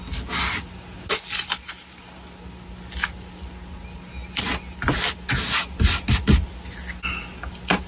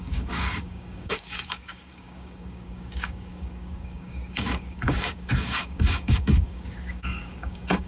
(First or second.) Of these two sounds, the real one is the first